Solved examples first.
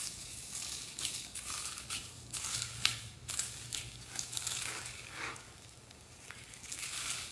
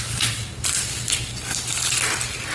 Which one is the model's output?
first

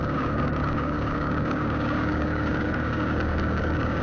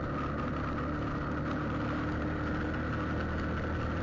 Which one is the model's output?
first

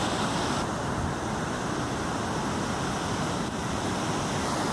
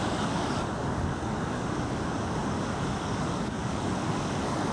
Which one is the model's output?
second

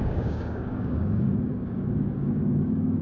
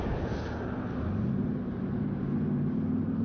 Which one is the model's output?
first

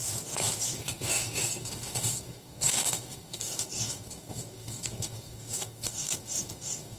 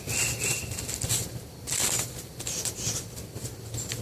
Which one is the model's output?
first